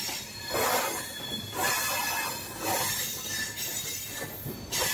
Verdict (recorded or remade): recorded